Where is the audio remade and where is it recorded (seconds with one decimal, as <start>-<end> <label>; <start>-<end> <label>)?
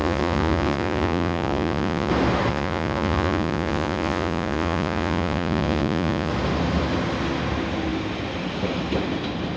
0.0-2.1 remade; 2.1-2.5 recorded; 2.5-6.3 remade; 6.3-9.6 recorded